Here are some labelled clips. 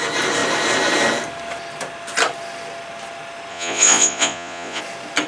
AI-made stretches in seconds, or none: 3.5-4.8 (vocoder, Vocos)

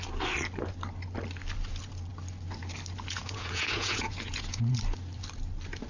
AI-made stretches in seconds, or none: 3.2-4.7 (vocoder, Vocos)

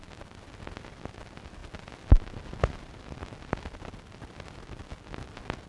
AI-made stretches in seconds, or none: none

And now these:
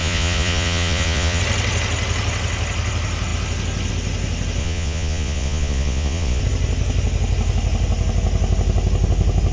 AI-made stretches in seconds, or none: 0.0-1.4 (vocoder, Vocos); 4.6-6.4

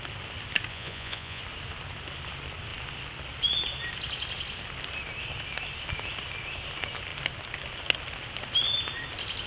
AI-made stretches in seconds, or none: 0.7-1.4 (vocoder, Vocos)

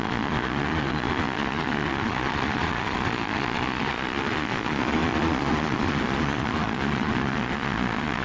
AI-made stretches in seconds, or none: 0.0-8.2 (vocoder, Vocos)

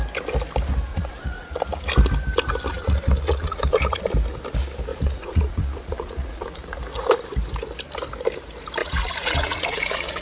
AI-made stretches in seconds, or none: 0.9-1.6 (vocoder, Vocos); 2.7-4.0; 4.9-6.8; 8.8-10.2